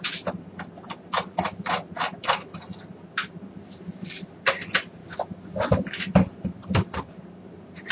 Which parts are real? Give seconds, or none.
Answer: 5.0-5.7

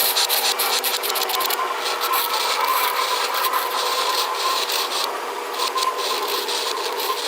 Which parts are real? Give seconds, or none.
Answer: 1.1-2.7; 4.9-7.3

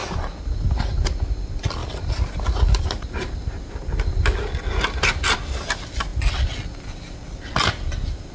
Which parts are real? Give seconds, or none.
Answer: 0.0-8.3

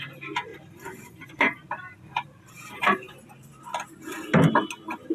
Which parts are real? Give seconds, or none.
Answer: 0.0-0.5; 3.6-5.1